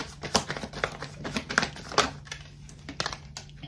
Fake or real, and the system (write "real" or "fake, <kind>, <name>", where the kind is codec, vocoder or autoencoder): real